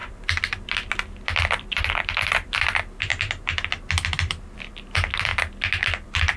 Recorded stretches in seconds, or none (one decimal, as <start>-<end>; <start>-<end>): 5.3-5.8